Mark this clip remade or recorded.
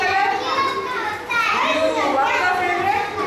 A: recorded